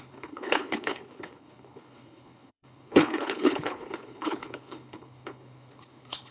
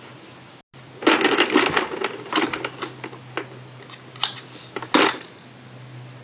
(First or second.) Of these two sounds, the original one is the second